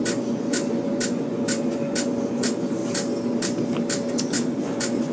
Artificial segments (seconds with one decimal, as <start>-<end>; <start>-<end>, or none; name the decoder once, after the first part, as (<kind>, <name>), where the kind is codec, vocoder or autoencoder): 0.0-2.8 (vocoder, Vocos); 4.1-5.1